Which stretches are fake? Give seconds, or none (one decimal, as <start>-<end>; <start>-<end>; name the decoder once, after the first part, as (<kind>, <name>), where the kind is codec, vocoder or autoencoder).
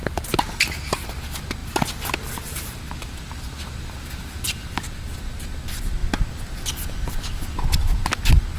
none